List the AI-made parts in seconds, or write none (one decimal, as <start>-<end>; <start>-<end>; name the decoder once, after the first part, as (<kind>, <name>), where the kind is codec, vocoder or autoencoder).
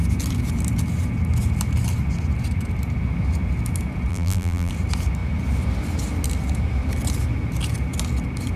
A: 4.1-4.7 (vocoder, BigVGAN v2)